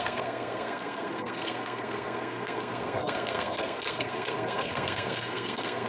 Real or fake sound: fake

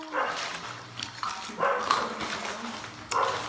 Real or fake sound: real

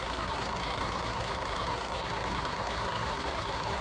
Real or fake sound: fake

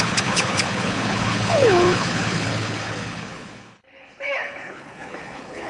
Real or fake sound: fake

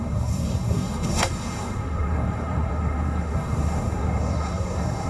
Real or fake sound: fake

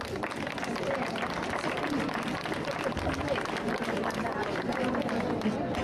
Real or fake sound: real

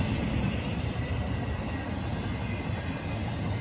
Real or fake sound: real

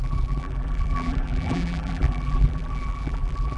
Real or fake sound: fake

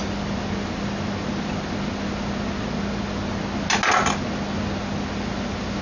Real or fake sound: real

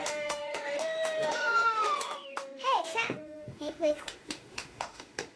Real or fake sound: fake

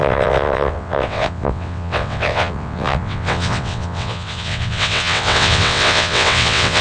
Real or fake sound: fake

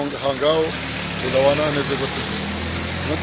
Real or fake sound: real